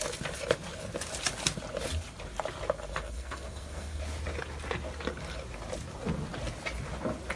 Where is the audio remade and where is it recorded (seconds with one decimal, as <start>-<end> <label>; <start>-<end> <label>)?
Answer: 0.0-2.9 recorded; 2.9-4.0 remade; 4.0-7.4 recorded